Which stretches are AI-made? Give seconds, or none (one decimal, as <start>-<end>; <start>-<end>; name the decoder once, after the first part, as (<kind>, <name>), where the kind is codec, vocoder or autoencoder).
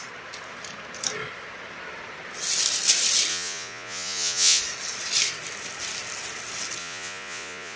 3.3-4.6 (vocoder, Vocos); 6.8-7.8